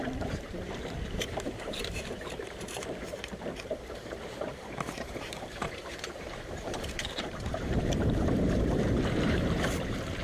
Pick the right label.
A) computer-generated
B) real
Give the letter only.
A